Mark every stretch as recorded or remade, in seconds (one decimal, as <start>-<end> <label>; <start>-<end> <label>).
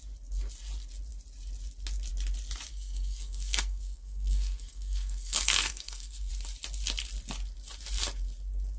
0.0-2.7 recorded; 2.7-6.3 remade; 6.3-8.8 recorded